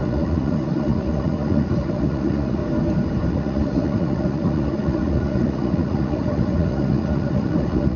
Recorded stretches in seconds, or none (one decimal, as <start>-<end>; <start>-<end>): 2.6-3.3